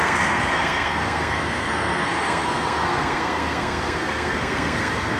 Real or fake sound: fake